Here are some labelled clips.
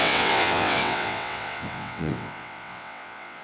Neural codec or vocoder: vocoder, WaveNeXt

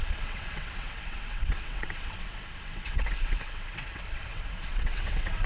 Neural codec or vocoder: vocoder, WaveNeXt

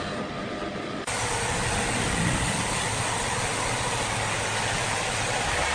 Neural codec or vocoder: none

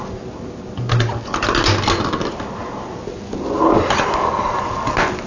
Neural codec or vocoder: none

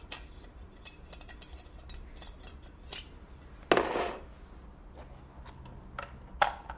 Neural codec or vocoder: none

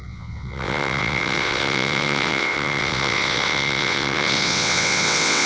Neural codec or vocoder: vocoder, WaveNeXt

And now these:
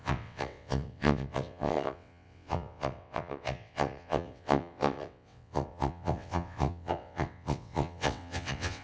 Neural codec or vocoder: vocoder, WaveNeXt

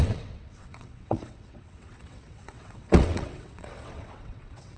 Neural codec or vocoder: vocoder, WaveNeXt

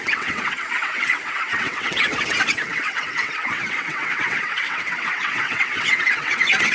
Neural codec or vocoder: vocoder, WaveNeXt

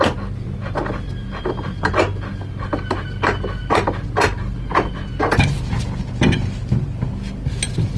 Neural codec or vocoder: none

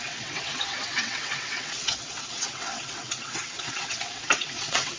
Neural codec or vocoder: vocoder, WaveNeXt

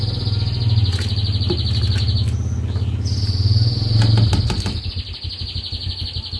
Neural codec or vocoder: none